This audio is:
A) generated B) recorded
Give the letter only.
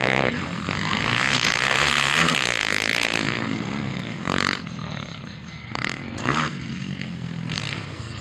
A